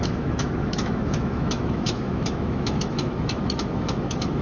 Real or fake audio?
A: fake